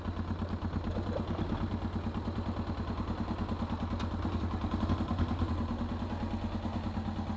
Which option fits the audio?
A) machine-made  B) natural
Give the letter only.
B